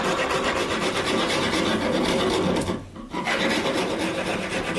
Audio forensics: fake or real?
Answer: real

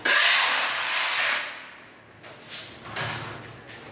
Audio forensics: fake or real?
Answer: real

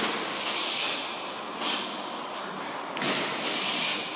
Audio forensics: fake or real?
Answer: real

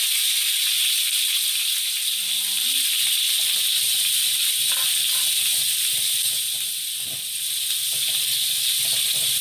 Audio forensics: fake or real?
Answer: real